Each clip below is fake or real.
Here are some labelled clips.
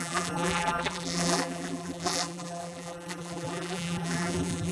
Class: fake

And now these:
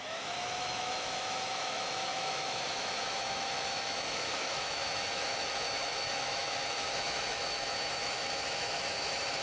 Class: fake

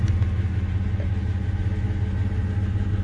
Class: real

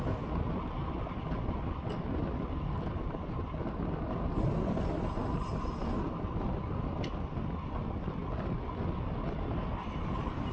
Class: real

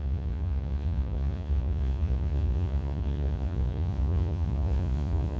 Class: fake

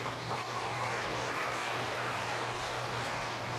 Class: fake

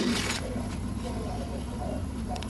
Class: fake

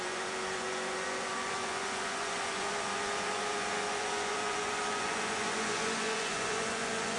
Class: fake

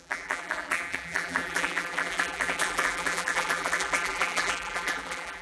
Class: fake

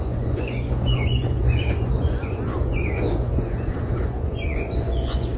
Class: fake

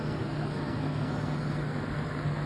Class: fake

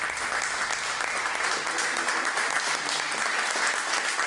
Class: real